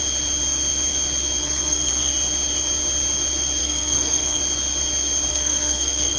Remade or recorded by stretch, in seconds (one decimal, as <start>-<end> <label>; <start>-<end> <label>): 0.0-1.4 recorded; 1.4-2.1 remade; 2.1-3.6 recorded; 3.6-4.4 remade; 4.4-5.3 recorded; 5.3-6.2 remade